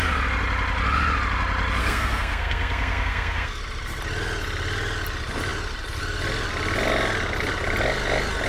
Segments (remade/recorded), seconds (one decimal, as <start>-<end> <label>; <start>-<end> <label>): 0.0-1.8 recorded; 1.8-3.6 remade; 3.6-8.5 recorded